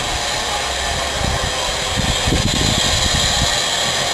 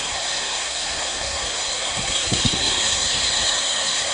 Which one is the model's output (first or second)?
second